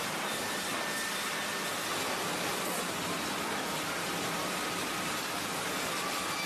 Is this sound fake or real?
real